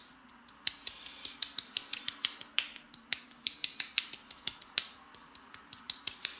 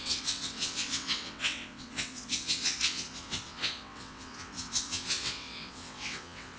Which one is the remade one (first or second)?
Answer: second